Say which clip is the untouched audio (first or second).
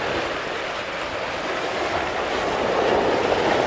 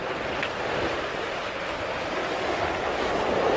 first